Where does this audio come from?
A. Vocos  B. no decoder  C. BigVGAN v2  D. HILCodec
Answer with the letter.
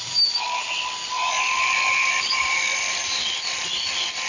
C